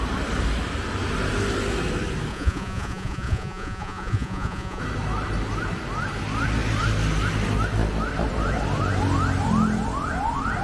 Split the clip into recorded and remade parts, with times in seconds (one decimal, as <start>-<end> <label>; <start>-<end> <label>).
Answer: 0.0-2.3 recorded; 2.3-4.8 remade; 4.8-10.6 recorded